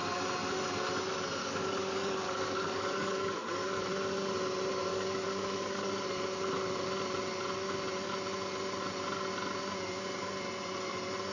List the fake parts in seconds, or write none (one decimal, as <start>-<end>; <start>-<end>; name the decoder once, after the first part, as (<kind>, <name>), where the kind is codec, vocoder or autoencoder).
1.4-3.9 (codec, DAC); 4.9-5.9